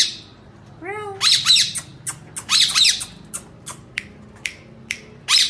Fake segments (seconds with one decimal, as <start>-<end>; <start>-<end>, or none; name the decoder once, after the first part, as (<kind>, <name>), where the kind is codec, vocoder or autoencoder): none